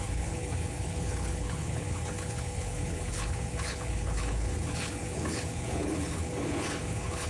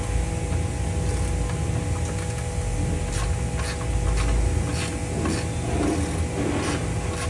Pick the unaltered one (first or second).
second